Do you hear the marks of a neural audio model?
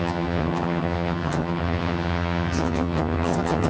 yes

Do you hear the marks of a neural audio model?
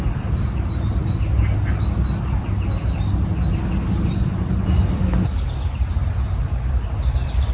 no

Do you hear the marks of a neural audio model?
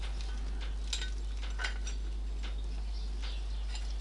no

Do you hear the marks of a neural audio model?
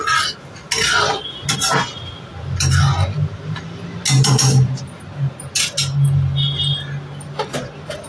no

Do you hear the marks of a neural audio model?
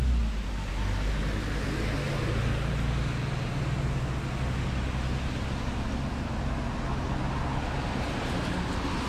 no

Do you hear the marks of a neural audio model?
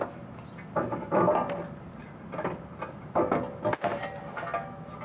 no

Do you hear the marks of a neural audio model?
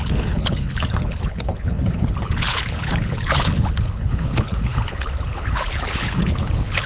yes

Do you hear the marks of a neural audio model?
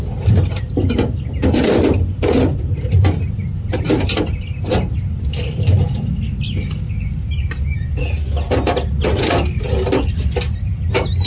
no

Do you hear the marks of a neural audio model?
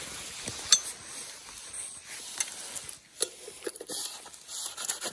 no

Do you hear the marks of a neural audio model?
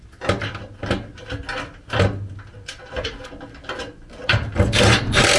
no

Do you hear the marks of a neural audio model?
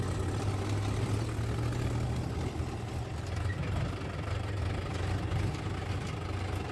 no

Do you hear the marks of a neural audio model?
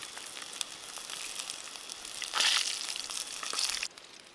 no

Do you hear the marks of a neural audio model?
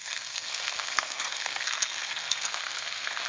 yes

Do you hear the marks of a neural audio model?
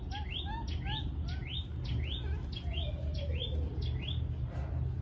no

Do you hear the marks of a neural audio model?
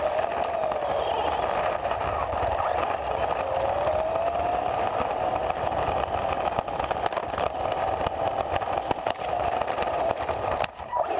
no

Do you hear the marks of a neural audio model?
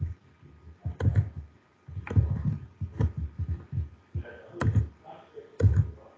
no